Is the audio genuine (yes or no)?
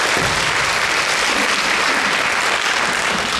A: yes